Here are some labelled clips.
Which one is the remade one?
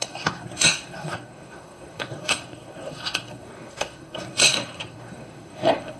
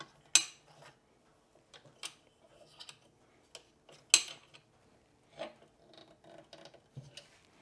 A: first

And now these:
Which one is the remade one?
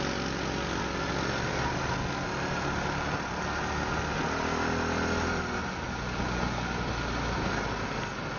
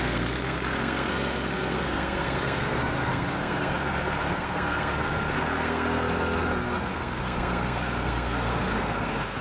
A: second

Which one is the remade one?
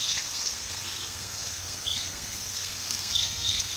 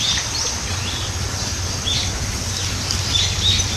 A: first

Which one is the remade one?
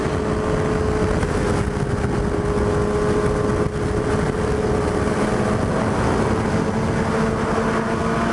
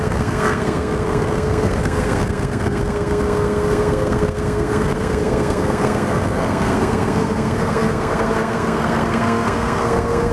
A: second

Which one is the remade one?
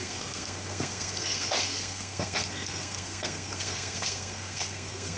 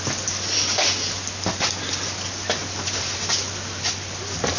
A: first